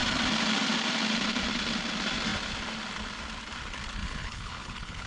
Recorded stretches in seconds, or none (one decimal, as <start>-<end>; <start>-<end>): 0.0-4.0

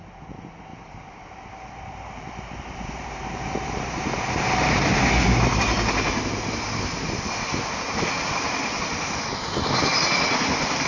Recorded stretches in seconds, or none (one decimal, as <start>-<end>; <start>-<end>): 0.0-0.7; 5.0-10.9

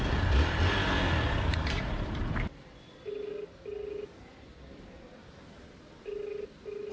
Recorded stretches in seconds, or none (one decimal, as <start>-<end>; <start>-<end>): 0.0-1.5; 2.9-6.9

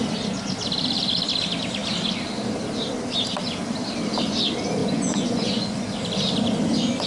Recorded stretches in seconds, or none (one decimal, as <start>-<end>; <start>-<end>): 0.0-4.8; 6.0-7.1

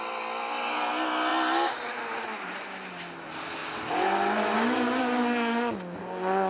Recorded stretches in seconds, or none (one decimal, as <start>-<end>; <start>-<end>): 0.0-6.5

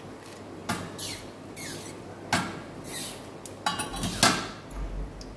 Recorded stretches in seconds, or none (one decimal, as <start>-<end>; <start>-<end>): 0.0-5.4

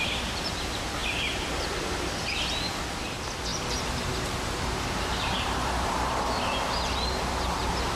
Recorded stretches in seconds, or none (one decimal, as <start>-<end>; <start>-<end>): 0.0-3.5; 6.0-8.0

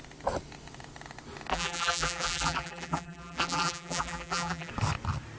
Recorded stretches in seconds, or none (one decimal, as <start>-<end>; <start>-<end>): 0.0-1.5; 4.7-5.4